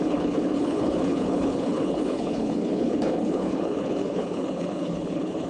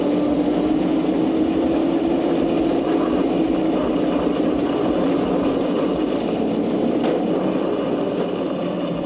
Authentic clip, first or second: second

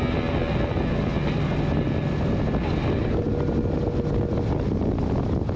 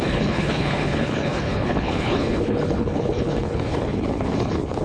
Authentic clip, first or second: first